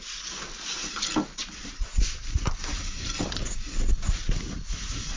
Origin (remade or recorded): recorded